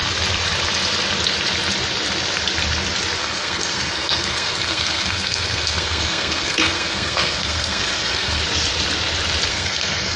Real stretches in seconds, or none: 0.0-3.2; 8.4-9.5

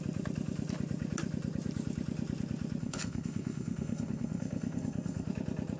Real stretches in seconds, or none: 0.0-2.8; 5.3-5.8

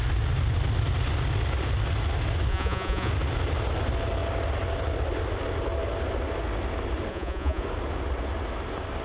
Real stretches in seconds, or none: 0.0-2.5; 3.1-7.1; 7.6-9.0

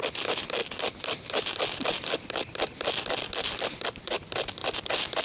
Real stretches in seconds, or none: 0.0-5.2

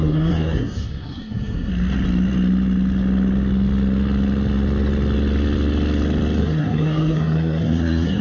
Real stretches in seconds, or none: 1.7-6.4

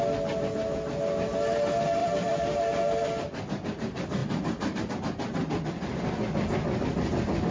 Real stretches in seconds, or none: 0.0-2.0; 2.6-4.2; 4.9-7.5

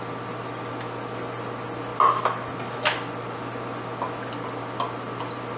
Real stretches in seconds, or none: 0.0-5.6

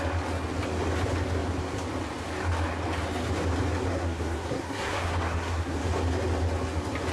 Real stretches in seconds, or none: 0.0-3.9; 5.8-7.1